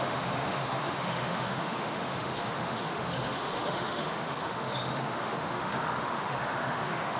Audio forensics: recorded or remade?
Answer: remade